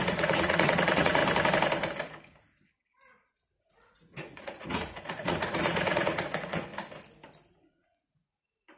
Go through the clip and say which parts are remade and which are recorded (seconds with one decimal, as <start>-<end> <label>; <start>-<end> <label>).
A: 0.0-1.2 remade; 1.2-3.7 recorded; 3.7-6.7 remade; 6.7-7.5 recorded; 7.5-8.8 remade